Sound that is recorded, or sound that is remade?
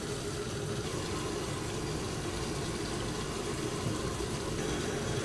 recorded